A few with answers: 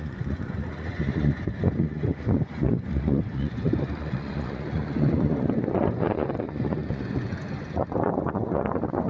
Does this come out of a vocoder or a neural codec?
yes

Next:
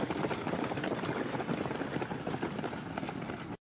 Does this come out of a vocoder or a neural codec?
no